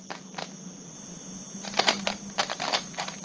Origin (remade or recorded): remade